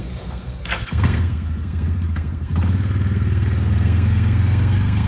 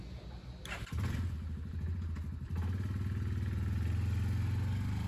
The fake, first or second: first